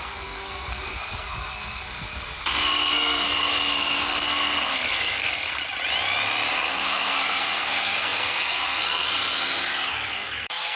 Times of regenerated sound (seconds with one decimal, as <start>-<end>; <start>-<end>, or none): 0.0-5.6; 6.5-10.8